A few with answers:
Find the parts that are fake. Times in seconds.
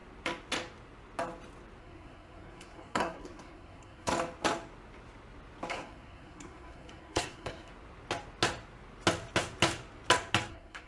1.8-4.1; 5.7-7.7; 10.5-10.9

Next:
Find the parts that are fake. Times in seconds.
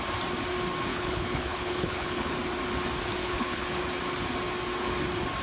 0.9-2.3; 3.2-3.8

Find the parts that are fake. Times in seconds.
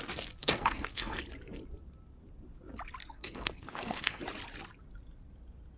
0.4-1.2; 3.0-4.2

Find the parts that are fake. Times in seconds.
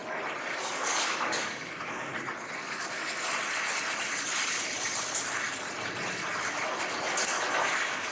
0.6-2.1; 2.6-3.0; 7.6-8.1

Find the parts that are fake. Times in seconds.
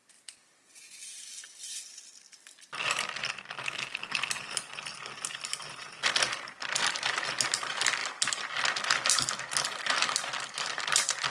none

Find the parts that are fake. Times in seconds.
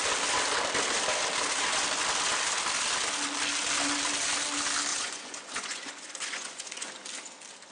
4.9-6.9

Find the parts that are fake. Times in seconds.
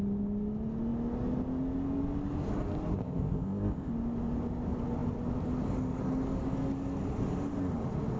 3.0-3.9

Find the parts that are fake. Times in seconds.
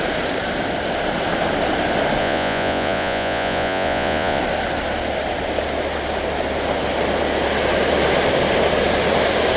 2.2-4.4